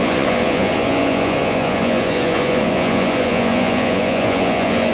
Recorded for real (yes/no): no